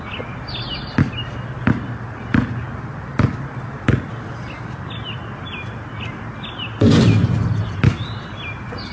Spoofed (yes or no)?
no